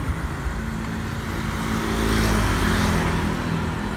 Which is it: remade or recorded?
recorded